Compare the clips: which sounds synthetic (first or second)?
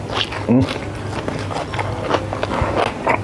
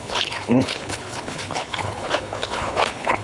second